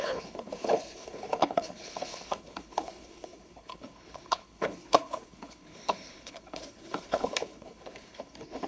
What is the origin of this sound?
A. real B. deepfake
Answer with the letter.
B